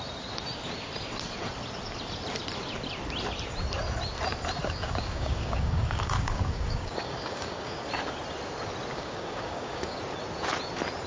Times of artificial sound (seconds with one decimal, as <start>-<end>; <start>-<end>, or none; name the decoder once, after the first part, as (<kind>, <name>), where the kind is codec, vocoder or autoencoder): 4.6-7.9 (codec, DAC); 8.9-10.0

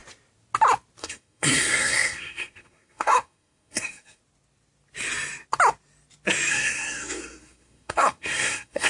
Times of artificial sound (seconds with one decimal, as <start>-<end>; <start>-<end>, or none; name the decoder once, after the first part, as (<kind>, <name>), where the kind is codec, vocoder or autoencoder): 1.0-4.2 (codec, SNAC); 6.5-8.9

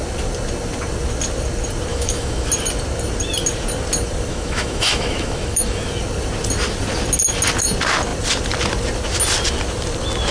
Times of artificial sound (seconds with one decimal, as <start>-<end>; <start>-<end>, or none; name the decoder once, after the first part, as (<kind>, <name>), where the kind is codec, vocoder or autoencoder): 1.9-2.5 (autoencoder, DAC-VAE); 4.3-5.9

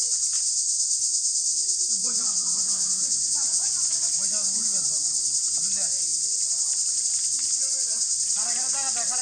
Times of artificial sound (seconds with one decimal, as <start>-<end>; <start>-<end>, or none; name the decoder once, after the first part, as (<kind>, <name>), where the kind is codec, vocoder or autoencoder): 2.0-3.7 (vocoder, Vocos)

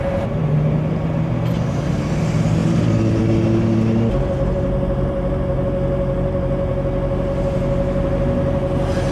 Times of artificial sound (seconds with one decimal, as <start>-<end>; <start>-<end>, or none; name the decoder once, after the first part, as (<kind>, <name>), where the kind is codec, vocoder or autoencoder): none

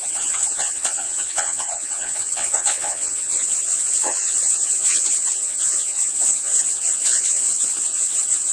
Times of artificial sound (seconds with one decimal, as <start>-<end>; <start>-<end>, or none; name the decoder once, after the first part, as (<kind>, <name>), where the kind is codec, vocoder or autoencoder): 0.0-8.5 (vocoder, WaveNeXt)

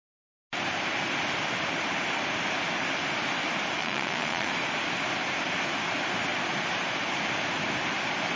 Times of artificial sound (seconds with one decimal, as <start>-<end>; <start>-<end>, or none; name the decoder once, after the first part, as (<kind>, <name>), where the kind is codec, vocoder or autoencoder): 3.8-4.5 (vocoder, Vocos)